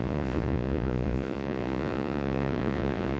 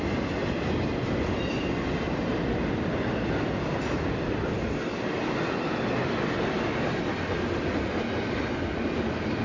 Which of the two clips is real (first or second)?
second